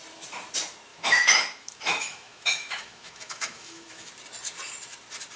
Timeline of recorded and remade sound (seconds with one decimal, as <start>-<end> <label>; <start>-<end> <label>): 0.0-0.9 recorded; 0.9-4.1 remade; 4.1-5.4 recorded